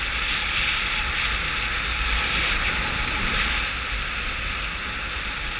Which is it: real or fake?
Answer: real